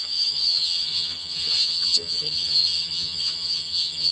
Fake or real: fake